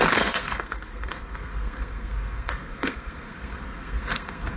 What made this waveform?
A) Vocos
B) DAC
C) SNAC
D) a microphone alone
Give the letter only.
C